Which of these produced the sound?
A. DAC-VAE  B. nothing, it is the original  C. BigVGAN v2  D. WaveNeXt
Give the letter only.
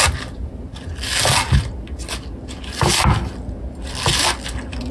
B